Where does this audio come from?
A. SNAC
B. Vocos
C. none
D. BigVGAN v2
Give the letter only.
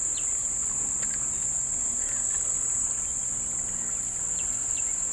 C